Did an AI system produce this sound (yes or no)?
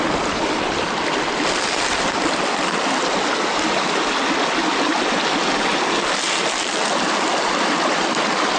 no